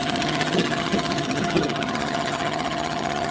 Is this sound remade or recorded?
remade